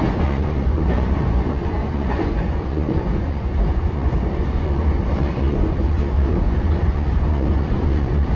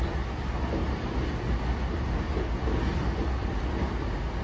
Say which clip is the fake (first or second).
first